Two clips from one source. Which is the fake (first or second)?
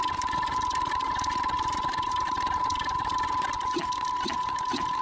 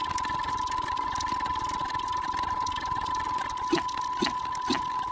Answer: first